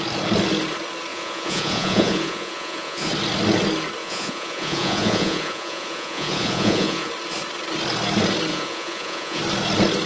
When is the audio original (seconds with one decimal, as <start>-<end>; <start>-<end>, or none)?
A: 0.0-1.1; 3.1-4.0; 7.1-8.5; 9.4-10.1